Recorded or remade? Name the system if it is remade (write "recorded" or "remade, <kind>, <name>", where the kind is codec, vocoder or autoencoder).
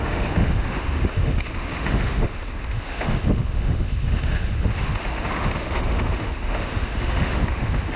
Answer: remade, autoencoder, DAC-VAE